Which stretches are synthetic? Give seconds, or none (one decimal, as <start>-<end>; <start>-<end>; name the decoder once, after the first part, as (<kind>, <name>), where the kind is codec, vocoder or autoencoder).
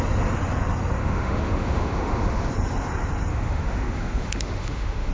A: 1.0-2.5 (autoencoder, DAC-VAE); 3.3-5.1